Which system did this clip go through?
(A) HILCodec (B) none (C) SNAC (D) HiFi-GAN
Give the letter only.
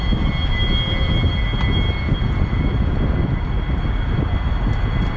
B